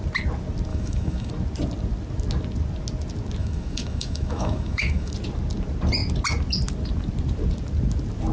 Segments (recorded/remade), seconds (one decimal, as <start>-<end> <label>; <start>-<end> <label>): 0.0-0.7 recorded; 0.7-1.3 remade; 1.3-3.4 recorded; 3.4-5.1 remade; 5.1-8.3 recorded